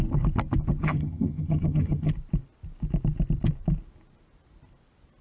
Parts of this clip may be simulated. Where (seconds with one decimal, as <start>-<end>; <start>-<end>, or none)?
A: 0.8-2.1